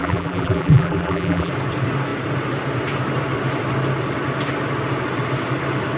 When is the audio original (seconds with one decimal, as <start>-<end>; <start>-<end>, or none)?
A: 1.5-6.0